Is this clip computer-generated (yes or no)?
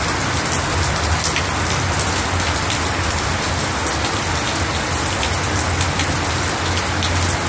no